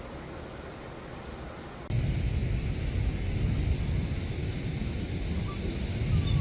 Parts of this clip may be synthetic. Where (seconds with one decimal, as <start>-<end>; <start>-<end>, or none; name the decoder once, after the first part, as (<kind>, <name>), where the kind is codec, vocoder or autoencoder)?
none